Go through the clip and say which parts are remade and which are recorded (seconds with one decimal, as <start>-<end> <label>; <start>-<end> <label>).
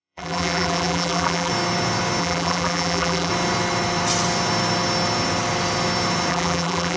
0.0-1.5 remade; 1.5-2.2 recorded; 2.2-3.3 remade; 3.3-6.3 recorded; 6.3-7.0 remade